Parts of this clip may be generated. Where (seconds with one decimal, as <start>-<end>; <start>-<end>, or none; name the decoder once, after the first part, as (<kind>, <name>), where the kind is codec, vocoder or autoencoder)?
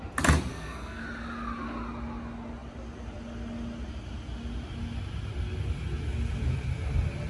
0.5-1.0 (codec, SNAC)